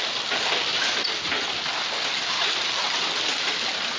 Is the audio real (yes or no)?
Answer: yes